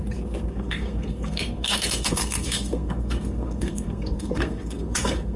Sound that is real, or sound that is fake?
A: fake